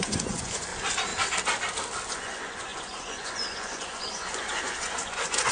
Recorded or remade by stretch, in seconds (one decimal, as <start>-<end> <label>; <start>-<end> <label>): 0.0-0.7 remade; 0.7-2.1 recorded; 2.1-5.5 remade